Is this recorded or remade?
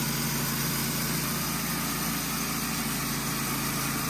recorded